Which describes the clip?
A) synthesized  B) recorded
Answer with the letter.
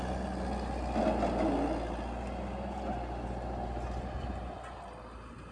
B